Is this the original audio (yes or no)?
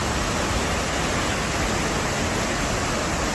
yes